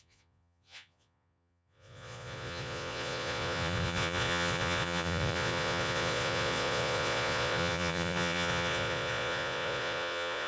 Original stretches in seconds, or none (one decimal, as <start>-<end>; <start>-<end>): none